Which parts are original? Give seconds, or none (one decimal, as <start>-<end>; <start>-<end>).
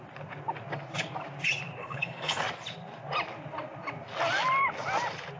0.0-1.8; 2.4-5.4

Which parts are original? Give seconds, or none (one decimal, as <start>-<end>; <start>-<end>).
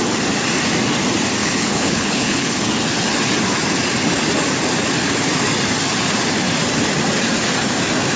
0.0-1.4; 2.6-8.2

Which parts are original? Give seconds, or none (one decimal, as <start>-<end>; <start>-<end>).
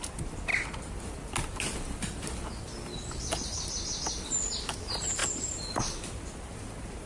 0.0-7.1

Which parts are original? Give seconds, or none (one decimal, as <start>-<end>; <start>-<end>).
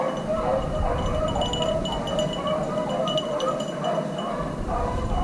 0.0-5.2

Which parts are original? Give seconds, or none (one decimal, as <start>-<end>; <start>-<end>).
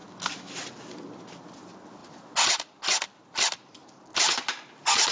0.0-5.1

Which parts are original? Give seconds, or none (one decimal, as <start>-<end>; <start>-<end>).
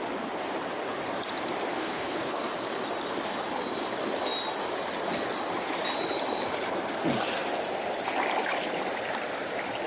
0.0-1.8; 2.4-9.9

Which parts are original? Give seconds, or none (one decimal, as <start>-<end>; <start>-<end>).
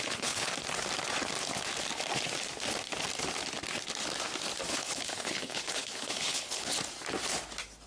0.5-4.7; 6.7-7.9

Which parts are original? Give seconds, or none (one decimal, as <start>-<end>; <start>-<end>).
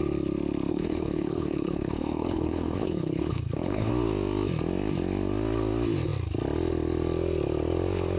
0.0-0.7; 3.9-8.2